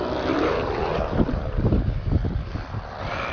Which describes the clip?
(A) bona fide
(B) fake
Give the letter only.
A